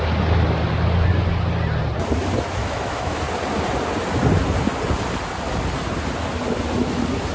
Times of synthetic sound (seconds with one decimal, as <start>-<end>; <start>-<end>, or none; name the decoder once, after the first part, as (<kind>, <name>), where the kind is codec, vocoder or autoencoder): 2.6-3.2 (autoencoder, DAC-VAE)